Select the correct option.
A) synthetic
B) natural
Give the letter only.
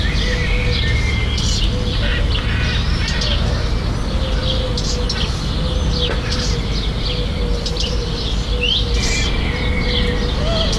B